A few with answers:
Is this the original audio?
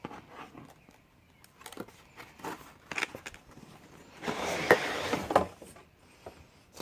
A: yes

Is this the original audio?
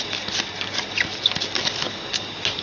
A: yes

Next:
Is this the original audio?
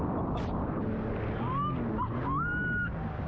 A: yes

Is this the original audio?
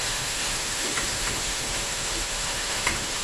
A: no